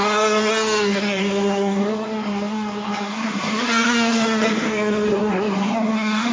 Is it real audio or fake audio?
fake